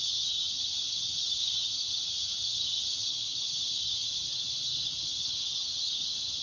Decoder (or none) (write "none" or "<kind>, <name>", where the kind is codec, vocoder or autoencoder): vocoder, HiFi-GAN